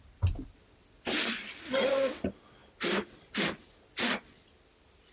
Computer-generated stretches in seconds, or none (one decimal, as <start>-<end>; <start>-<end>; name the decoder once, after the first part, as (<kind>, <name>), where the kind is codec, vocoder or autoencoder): none